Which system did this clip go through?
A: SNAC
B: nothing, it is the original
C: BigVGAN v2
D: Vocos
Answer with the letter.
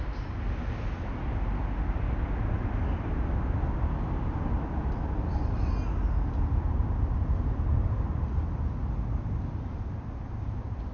B